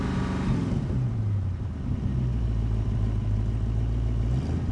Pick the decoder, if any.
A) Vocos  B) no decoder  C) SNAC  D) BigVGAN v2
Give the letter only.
B